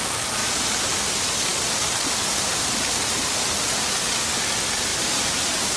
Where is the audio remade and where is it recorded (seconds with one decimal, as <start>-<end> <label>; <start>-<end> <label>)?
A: 0.0-0.4 recorded; 0.4-1.1 remade; 1.1-4.9 recorded; 4.9-5.8 remade